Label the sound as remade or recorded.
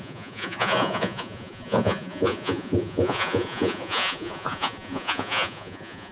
remade